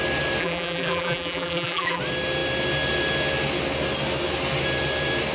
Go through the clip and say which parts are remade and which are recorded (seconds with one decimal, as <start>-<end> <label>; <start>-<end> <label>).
0.0-0.4 recorded; 0.4-2.0 remade; 2.0-5.3 recorded